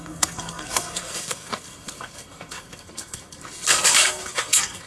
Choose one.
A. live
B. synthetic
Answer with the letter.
B